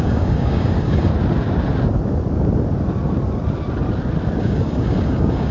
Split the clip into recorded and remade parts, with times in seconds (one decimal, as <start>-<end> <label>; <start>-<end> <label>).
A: 0.0-1.1 remade; 1.1-4.4 recorded; 4.4-5.5 remade